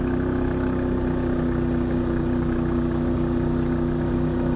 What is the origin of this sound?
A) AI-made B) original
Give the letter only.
B